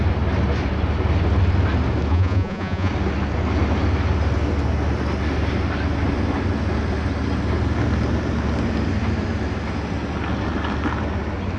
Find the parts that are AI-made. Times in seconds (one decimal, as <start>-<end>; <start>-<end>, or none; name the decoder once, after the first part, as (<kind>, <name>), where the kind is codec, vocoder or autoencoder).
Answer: 2.1-2.9 (vocoder, Vocos)